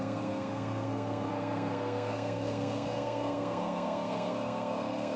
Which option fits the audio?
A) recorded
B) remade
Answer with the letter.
B